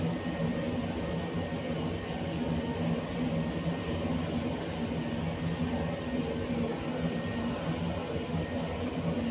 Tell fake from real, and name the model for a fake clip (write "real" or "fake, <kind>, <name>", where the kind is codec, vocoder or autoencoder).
real